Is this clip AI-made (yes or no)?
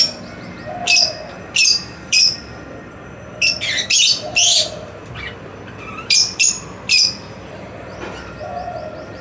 yes